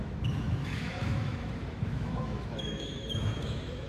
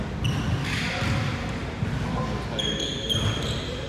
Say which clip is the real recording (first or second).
second